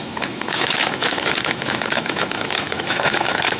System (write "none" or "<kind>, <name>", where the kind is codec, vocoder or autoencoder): autoencoder, DAC-VAE